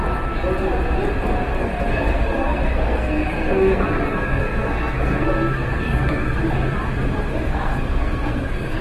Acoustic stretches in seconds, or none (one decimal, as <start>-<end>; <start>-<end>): 0.0-1.5; 6.4-7.3